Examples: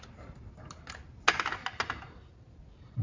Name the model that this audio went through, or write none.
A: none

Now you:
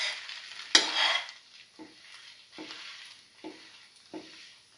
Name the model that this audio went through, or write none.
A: none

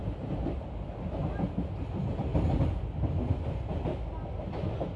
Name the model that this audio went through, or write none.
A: none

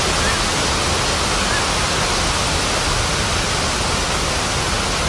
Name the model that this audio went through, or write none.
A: none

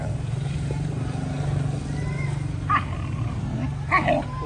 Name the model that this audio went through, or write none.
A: none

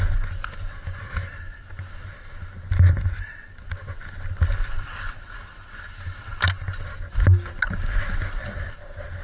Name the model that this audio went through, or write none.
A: none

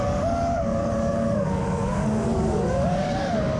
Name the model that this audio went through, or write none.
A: codec, DAC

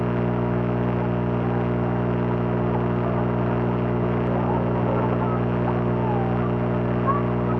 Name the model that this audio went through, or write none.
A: none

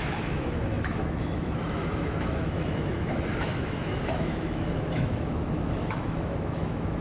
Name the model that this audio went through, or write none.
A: autoencoder, DAC-VAE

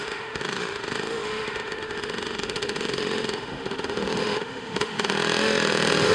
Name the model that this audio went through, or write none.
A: autoencoder, DAC-VAE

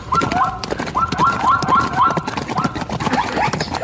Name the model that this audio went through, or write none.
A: none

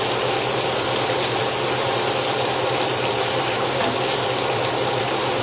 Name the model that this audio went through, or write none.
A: none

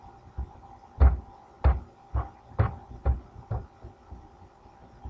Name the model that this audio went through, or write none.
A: none